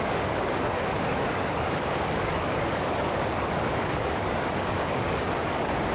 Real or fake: fake